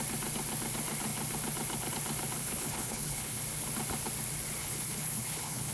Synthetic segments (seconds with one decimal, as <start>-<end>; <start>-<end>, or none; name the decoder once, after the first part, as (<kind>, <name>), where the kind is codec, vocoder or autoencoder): 2.4-3.4 (codec, HILCodec); 4.6-5.7